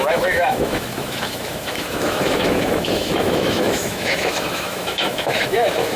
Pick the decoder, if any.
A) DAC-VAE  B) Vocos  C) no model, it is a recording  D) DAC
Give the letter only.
A